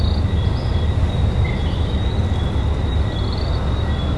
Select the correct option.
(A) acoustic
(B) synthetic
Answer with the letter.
A